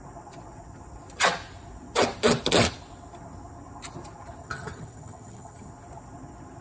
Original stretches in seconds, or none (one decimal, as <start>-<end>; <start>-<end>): 0.0-4.4; 5.7-6.6